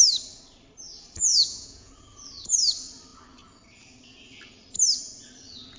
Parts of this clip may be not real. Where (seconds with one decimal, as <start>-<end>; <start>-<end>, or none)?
1.2-1.9